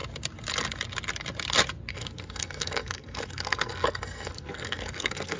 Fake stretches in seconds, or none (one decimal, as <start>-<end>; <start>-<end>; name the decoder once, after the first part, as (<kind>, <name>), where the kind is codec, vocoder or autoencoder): 1.9-5.4 (codec, SNAC)